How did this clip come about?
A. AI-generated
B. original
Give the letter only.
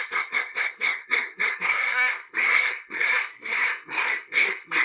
A